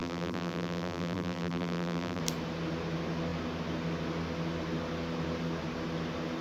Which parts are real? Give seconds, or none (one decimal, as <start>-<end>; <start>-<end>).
2.2-6.4